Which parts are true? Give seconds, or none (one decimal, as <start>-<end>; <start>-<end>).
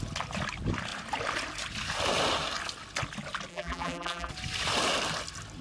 0.0-3.5; 4.3-5.6